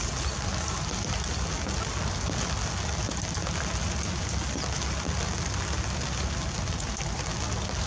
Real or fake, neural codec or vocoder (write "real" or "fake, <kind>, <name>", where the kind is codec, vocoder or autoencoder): real